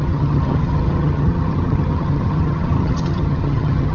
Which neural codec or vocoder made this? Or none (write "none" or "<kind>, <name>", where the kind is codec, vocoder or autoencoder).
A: vocoder, HiFi-GAN